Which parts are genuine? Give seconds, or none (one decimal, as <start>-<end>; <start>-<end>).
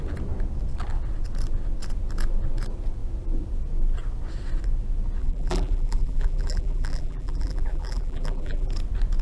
0.0-5.2; 8.7-9.2